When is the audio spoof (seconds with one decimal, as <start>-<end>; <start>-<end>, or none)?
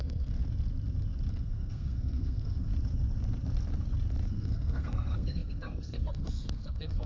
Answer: 0.0-0.4; 1.3-2.7; 4.3-7.1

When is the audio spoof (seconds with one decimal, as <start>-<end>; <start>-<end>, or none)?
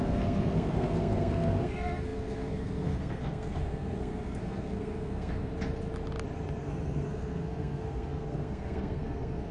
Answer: 0.0-5.5; 6.6-9.5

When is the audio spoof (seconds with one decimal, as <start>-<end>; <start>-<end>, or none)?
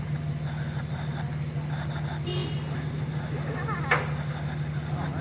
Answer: none